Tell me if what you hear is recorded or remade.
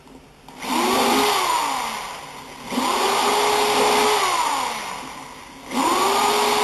recorded